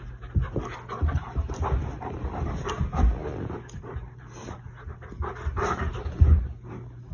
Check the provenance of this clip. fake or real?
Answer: real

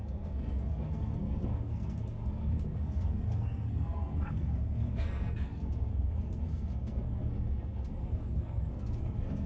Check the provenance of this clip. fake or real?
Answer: fake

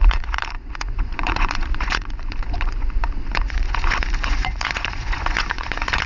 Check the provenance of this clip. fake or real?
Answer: fake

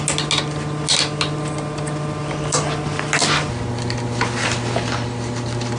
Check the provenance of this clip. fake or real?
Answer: real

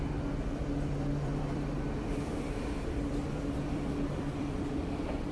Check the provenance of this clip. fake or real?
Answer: fake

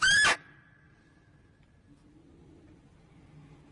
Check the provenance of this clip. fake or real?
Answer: real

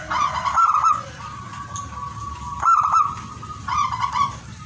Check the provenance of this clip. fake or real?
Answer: real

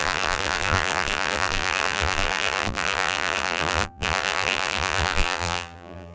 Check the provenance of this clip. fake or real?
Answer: fake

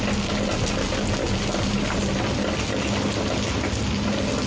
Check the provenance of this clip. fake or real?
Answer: real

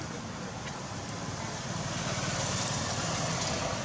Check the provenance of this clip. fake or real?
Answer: real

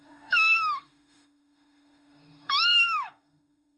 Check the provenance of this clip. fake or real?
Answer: fake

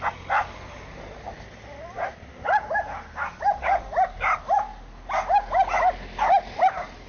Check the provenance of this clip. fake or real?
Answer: real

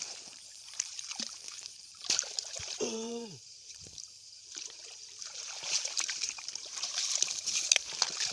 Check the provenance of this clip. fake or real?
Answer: fake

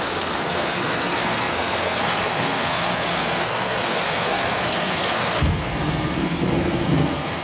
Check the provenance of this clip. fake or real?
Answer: fake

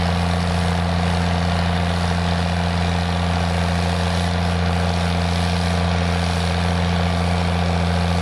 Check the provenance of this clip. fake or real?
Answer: real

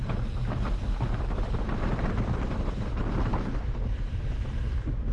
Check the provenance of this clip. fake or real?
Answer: real